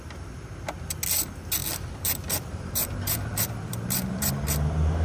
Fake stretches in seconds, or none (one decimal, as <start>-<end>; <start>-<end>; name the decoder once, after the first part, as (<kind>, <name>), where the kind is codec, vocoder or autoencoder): 1.6-4.3 (vocoder, BigVGAN v2)